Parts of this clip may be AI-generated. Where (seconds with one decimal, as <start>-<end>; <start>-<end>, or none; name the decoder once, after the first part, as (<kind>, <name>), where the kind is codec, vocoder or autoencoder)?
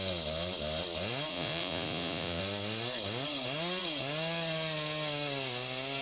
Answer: 1.3-2.4 (vocoder, Vocos)